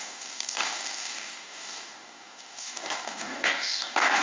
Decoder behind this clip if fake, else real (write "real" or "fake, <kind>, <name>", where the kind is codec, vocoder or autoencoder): fake, codec, DAC